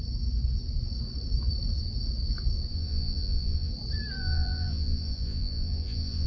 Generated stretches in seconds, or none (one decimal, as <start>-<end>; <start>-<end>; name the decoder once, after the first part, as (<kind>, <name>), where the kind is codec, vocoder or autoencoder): 2.7-3.7 (vocoder, Vocos); 4.2-6.3

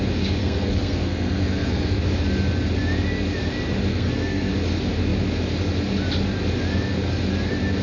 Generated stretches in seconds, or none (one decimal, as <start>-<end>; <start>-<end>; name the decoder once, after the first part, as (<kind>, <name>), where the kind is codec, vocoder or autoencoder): 0.4-2.0 (codec, SNAC); 3.9-4.5

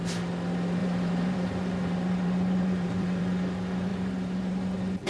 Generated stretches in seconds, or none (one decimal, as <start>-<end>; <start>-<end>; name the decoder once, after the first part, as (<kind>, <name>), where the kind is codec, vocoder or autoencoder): 0.8-3.2 (vocoder, BigVGAN v2); 3.9-4.6

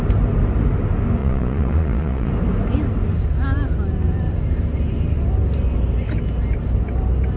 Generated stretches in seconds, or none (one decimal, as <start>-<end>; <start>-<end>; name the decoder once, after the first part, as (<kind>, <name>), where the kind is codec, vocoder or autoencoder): 1.2-2.3 (vocoder, Vocos)